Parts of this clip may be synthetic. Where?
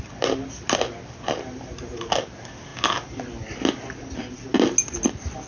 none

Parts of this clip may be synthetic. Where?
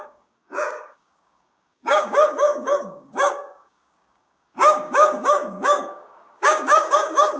0.0-7.4 (codec, DAC)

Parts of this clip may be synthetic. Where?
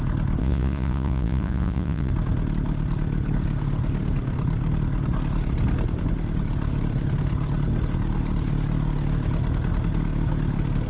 0.4-2.1 (vocoder, Vocos)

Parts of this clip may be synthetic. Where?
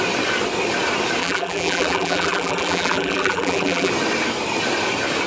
1.2-3.9 (vocoder, BigVGAN v2)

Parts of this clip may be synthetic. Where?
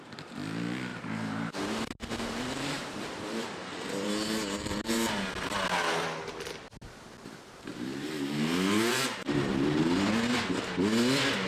0.9-5.3 (vocoder, BigVGAN v2); 7.7-9.5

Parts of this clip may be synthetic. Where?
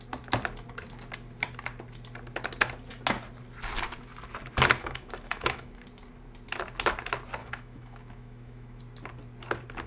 4.8-5.8 (autoencoder, DAC-VAE); 7.4-8.8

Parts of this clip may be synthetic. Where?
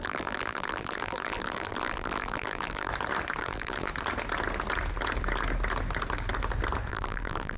0.0-2.9 (vocoder, BigVGAN v2); 3.4-3.9; 6.9-7.6